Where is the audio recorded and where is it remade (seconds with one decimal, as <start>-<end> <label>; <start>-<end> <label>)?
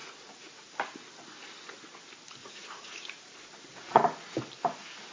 0.0-0.7 remade; 0.7-2.4 recorded; 2.4-4.0 remade; 4.0-5.1 recorded